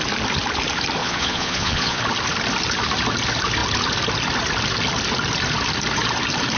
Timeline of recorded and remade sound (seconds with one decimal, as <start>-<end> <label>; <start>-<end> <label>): 0.0-1.0 recorded; 1.0-2.0 remade; 2.0-6.6 recorded